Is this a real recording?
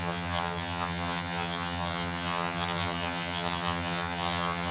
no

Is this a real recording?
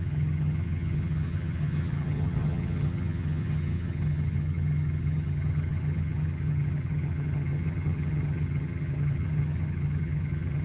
no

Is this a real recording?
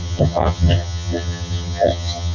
no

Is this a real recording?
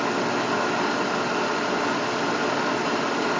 yes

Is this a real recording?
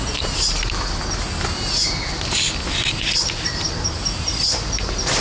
yes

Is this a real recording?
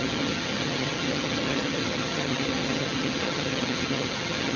no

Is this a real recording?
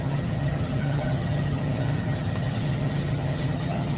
no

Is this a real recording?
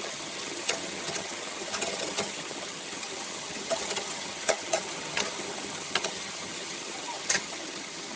no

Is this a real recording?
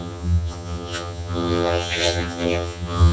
no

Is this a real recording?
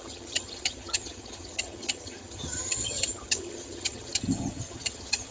no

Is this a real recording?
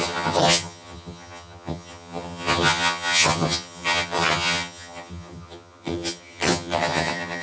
no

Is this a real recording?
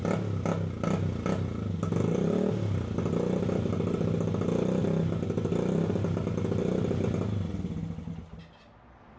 yes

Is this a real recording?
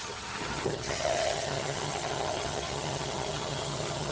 no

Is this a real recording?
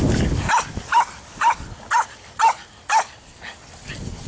yes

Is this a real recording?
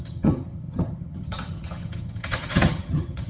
no